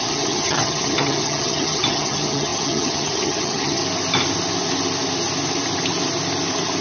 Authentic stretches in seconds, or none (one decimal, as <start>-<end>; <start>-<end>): 3.8-6.8